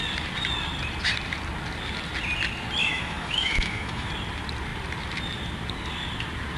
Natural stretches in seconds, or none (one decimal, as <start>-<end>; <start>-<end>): 0.0-2.8; 4.1-6.6